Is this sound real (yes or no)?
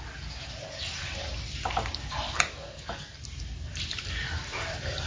yes